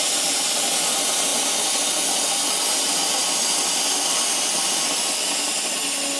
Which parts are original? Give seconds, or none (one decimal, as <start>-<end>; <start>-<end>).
0.0-6.2